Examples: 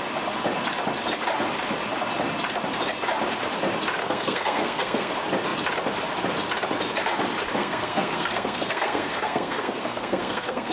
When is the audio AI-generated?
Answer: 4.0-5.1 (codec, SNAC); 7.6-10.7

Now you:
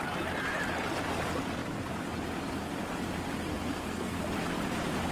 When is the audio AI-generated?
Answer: 3.5-4.2 (codec, SNAC)

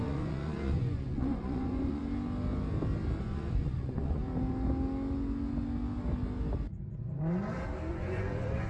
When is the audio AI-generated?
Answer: 0.0-2.0 (vocoder, Vocos); 3.2-4.2; 7.9-8.7

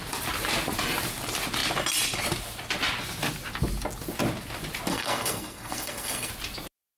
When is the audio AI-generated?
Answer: 4.9-6.3 (codec, SNAC)

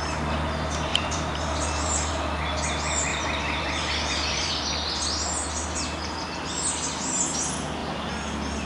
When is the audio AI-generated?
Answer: 0.9-2.1 (vocoder, BigVGAN v2); 3.1-4.5

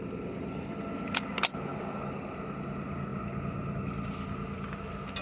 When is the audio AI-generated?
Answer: none

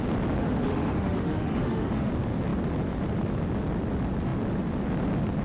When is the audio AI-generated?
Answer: 0.4-2.1 (autoencoder, DAC-VAE)